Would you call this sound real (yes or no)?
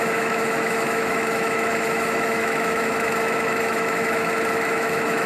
no